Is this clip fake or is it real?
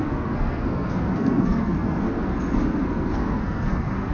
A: fake